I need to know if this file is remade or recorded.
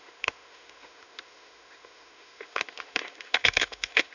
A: remade